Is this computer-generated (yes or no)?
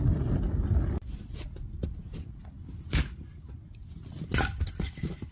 no